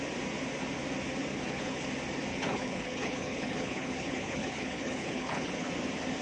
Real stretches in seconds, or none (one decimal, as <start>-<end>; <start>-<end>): 0.0-1.3; 1.9-2.3; 5.7-6.2